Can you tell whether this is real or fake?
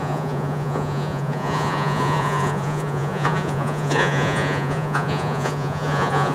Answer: fake